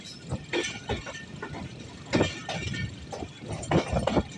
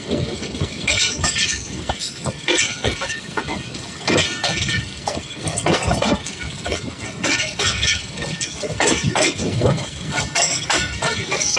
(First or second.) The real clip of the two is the first